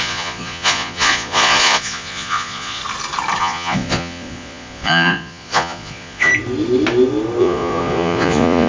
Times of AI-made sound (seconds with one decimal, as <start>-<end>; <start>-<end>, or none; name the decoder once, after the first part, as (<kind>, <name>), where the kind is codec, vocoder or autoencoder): 0.0-2.8 (vocoder, Vocos); 3.4-6.3; 7.4-8.7